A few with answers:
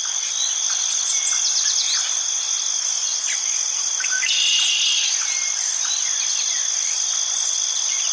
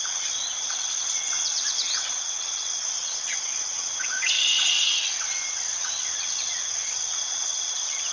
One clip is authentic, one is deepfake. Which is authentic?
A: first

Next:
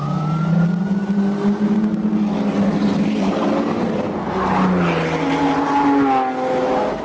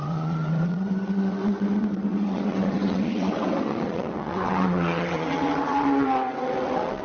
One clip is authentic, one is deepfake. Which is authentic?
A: first